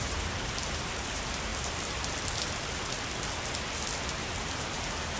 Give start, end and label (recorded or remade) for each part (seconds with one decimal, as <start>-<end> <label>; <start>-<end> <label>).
0.0-1.5 remade; 1.5-4.5 recorded; 4.5-5.2 remade